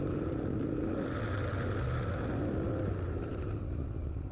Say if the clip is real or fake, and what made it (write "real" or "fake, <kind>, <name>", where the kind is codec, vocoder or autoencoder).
fake, vocoder, BigVGAN v2